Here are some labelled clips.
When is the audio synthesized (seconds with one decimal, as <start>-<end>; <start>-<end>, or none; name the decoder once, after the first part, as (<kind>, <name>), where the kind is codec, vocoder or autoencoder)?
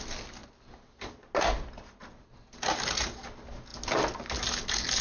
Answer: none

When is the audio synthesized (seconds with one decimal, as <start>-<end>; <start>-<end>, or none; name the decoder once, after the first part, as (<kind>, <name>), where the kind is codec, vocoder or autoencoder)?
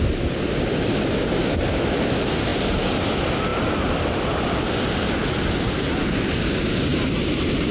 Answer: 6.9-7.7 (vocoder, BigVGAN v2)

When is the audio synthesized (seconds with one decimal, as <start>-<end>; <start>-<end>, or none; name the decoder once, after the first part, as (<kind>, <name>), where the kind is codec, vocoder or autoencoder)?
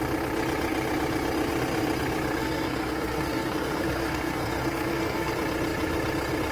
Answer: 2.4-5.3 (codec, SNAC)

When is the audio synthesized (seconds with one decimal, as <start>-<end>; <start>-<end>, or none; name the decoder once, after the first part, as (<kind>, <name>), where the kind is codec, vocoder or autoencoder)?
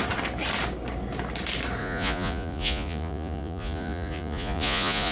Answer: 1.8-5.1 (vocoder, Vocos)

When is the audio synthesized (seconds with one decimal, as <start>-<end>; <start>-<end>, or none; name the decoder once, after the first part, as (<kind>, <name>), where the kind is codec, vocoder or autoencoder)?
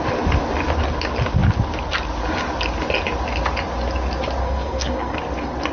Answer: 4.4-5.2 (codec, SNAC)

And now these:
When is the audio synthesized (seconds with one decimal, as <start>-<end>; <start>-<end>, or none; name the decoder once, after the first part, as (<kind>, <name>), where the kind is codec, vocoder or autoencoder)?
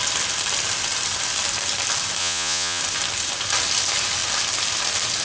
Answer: 2.2-2.8 (vocoder, Vocos)